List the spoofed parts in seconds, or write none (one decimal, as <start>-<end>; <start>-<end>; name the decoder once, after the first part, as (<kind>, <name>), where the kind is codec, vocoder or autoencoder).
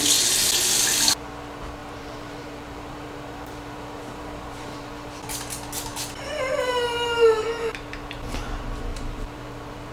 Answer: 1.8-5.2 (vocoder, BigVGAN v2); 8.9-9.9